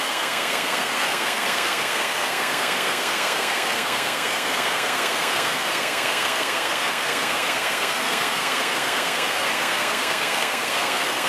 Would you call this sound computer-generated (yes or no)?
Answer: yes